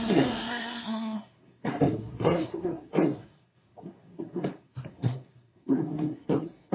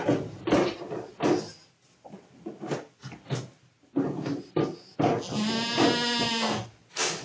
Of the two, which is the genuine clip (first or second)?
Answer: second